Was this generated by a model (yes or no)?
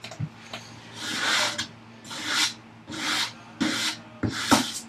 no